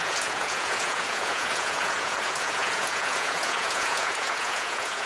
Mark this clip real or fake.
fake